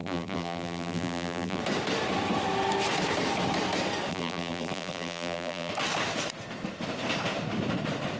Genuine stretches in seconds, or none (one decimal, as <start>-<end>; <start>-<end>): 1.6-4.1; 5.7-8.2